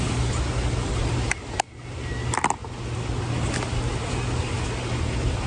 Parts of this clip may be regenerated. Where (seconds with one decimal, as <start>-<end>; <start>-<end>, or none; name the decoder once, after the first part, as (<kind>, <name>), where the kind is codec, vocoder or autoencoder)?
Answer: none